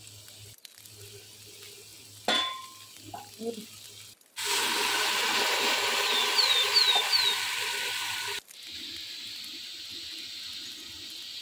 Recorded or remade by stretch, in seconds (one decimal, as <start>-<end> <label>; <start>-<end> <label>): 0.0-11.4 recorded